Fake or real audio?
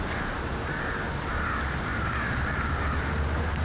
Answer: fake